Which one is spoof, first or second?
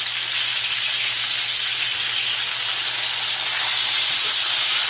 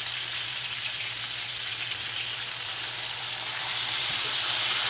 second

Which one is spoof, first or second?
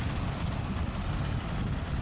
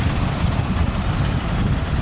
second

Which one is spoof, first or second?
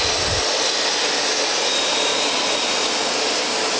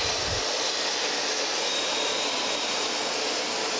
second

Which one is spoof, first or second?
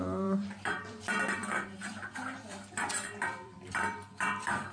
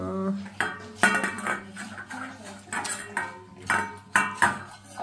first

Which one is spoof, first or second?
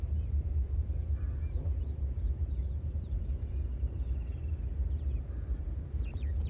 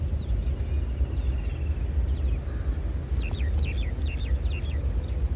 first